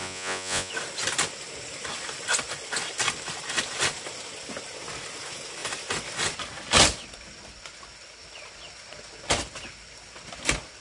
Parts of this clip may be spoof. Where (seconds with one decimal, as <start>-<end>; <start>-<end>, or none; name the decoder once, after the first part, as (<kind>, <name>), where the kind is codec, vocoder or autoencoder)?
0.0-0.7 (vocoder, Vocos)